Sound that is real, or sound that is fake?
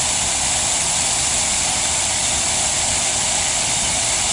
real